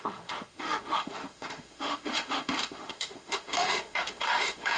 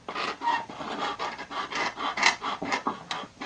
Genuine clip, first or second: second